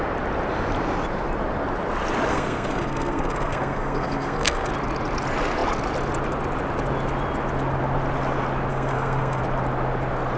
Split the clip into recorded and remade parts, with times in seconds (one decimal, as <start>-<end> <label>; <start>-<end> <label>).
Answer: 0.0-2.3 recorded; 2.3-4.7 remade; 4.7-8.7 recorded; 8.7-9.4 remade; 9.4-10.4 recorded